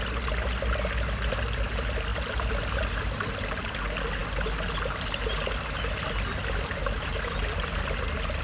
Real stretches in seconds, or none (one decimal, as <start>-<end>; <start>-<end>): 0.0-8.4